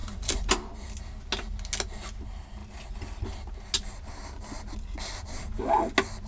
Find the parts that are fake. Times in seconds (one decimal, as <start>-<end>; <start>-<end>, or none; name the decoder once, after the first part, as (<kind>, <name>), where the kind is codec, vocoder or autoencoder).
0.0-0.5 (vocoder, BigVGAN v2)